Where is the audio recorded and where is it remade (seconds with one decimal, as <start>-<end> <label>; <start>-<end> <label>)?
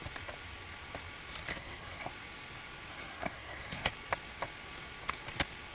0.0-1.5 recorded; 1.5-2.1 remade; 2.1-2.9 recorded; 2.9-3.9 remade; 3.9-5.7 recorded